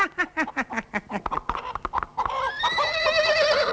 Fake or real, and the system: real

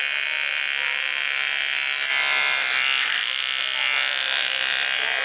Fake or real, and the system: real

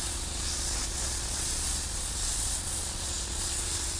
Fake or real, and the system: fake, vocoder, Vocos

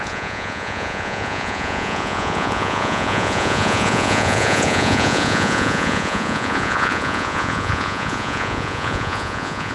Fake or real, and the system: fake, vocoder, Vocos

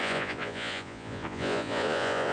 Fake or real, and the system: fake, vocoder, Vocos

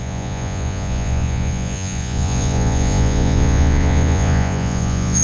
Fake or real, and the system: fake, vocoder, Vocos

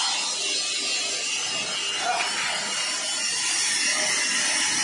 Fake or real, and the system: real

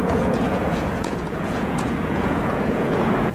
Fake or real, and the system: fake, vocoder, Vocos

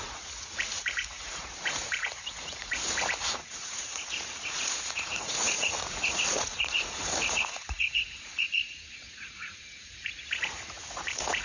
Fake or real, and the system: fake, vocoder, Vocos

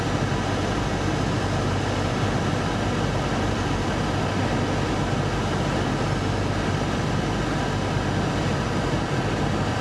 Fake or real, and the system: real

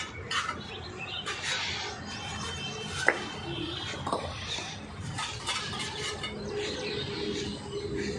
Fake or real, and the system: real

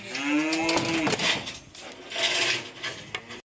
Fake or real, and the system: real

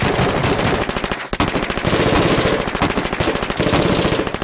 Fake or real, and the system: real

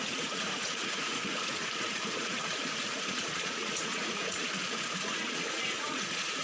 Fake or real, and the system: fake, vocoder, Vocos